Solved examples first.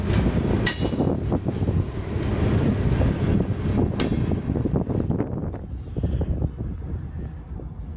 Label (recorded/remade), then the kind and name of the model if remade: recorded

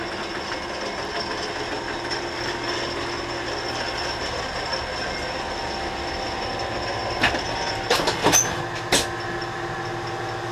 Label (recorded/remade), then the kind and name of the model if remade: recorded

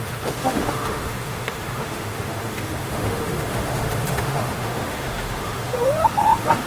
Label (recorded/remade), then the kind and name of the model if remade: remade, autoencoder, DAC-VAE